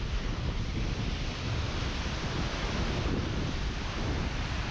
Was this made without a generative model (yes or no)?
yes